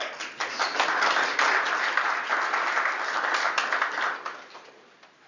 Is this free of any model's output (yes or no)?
yes